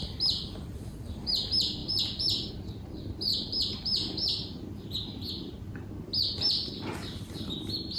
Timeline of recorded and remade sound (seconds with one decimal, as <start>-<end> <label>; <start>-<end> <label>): 0.0-3.3 remade; 3.3-7.2 recorded; 7.2-8.0 remade